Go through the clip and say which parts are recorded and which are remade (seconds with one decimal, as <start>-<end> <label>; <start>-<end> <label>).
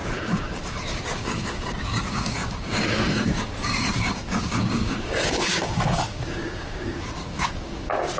0.0-8.2 remade